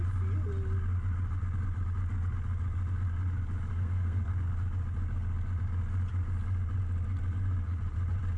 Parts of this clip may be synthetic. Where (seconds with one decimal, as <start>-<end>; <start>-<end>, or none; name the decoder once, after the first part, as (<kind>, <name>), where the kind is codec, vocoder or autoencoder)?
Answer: 3.7-4.3 (codec, SNAC)